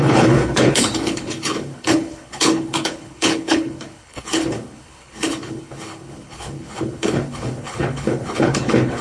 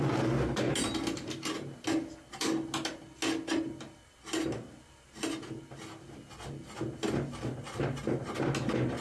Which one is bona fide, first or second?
second